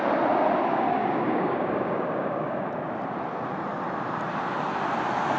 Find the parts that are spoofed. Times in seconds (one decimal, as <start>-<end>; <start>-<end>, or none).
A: 0.7-2.7